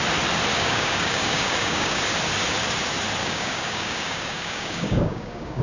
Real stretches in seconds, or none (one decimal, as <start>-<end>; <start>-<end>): 0.0-0.5; 2.0-3.2